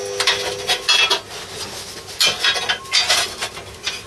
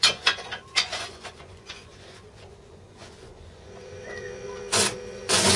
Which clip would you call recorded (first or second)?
first